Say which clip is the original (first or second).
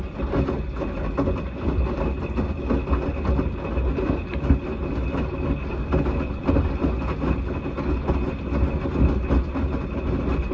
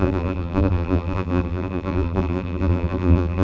first